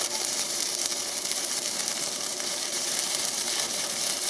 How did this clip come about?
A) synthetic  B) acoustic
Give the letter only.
A